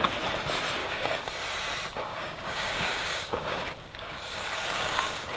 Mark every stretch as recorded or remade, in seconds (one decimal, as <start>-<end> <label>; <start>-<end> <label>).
0.0-0.8 recorded; 0.8-1.3 remade; 1.3-2.1 recorded; 2.1-5.4 remade